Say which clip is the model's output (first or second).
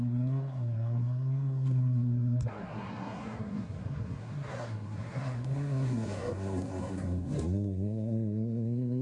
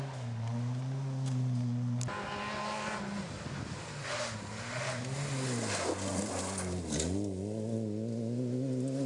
first